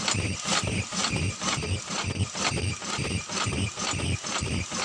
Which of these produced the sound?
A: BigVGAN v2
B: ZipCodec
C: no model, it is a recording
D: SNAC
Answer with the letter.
C